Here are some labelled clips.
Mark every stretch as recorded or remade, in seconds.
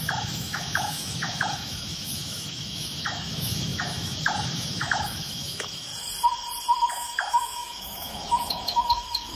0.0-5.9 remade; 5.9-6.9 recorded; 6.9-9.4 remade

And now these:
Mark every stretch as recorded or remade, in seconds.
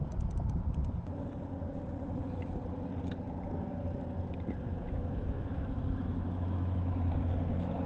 0.0-4.7 recorded; 4.7-7.1 remade; 7.1-7.9 recorded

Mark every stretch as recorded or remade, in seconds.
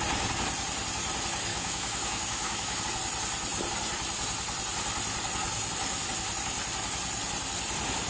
0.0-1.5 recorded; 1.5-2.8 remade; 2.8-8.1 recorded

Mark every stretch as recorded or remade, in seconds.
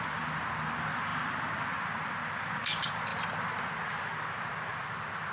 0.0-5.3 recorded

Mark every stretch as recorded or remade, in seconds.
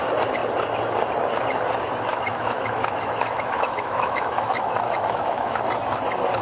0.0-2.1 recorded; 2.1-5.6 remade; 5.6-6.4 recorded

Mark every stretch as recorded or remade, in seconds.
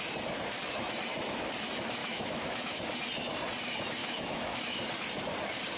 0.0-2.0 recorded; 2.0-2.8 remade; 2.8-4.0 recorded; 4.0-4.6 remade; 4.6-5.8 recorded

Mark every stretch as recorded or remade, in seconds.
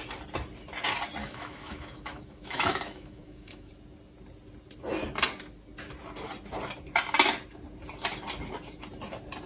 0.0-1.2 recorded; 1.2-3.7 remade; 3.7-9.5 recorded